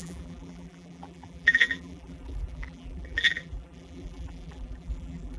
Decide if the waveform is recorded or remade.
remade